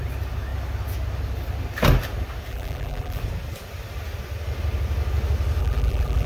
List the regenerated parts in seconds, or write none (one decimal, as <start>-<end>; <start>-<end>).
2.5-3.2; 5.6-6.3